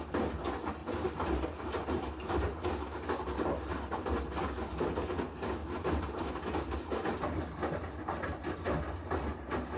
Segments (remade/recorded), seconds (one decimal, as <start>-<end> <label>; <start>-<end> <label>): 0.0-0.8 recorded; 0.8-2.3 remade; 2.3-5.6 recorded; 5.6-6.3 remade; 6.3-9.8 recorded